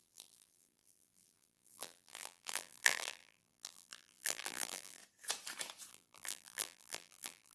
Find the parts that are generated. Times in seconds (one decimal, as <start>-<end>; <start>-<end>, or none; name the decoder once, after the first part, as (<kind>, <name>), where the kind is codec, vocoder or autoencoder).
0.0-5.0 (vocoder, BigVGAN v2); 5.9-7.5